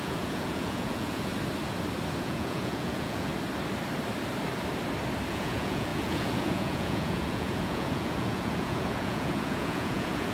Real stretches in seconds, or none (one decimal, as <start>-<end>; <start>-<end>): 1.3-2.2; 3.3-5.3